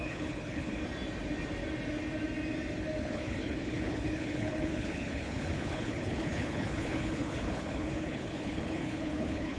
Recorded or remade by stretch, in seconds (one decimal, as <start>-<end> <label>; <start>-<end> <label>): 0.0-0.8 remade; 0.8-3.0 recorded; 3.0-9.6 remade